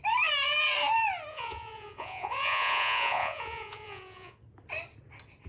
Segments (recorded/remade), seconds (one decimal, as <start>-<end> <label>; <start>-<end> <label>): 0.0-1.3 recorded; 1.3-4.4 remade; 4.4-5.5 recorded